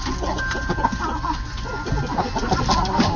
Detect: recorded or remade recorded